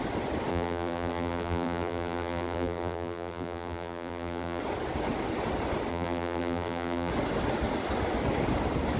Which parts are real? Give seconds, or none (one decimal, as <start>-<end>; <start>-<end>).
0.0-0.5; 4.6-5.9; 7.1-9.0